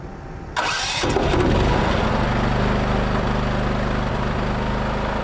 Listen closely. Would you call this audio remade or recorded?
recorded